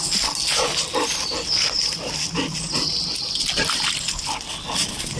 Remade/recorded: recorded